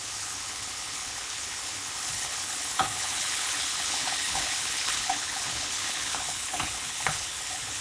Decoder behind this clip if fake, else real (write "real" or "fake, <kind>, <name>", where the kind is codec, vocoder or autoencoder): fake, codec, HILCodec